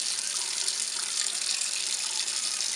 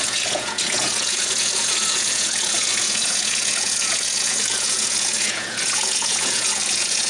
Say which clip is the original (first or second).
first